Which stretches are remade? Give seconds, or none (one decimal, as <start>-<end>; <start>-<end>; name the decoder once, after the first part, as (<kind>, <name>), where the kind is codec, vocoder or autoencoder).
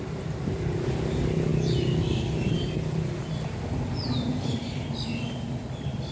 none